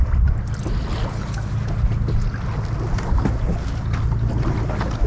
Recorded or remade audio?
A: recorded